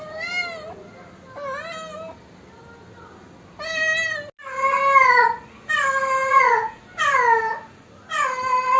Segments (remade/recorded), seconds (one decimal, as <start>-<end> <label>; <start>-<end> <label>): 0.0-6.3 recorded; 6.3-6.8 remade; 6.8-8.8 recorded